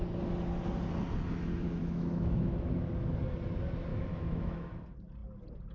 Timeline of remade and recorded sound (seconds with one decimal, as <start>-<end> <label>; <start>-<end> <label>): 0.0-1.8 recorded; 1.8-2.8 remade; 2.8-3.9 recorded; 3.9-4.7 remade; 4.7-5.7 recorded